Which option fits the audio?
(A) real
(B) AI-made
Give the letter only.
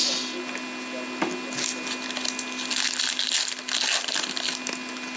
A